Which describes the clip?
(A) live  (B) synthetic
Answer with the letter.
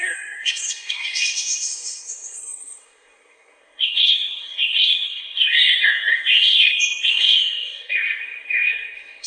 B